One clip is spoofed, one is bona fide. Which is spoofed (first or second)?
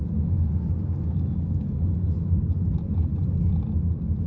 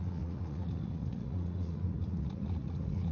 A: second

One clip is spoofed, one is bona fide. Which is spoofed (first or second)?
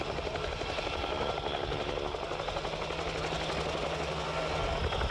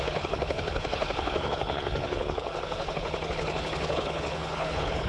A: second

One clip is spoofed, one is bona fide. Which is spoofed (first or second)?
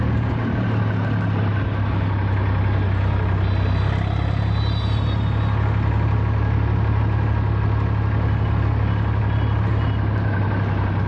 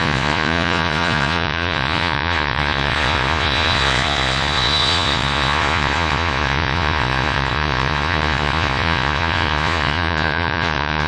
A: second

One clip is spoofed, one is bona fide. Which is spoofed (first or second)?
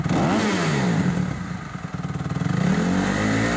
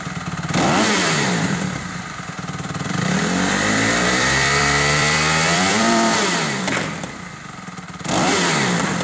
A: second